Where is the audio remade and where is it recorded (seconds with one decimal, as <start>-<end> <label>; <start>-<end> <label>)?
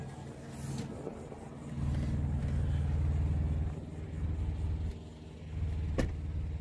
0.0-6.6 recorded